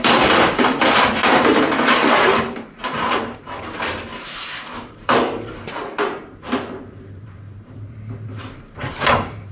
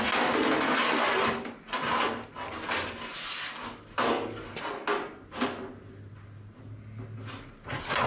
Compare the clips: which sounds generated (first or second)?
first